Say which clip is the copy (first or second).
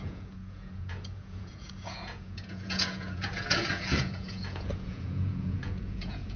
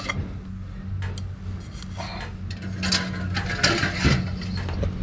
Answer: first